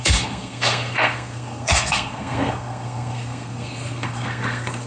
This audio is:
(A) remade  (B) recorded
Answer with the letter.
A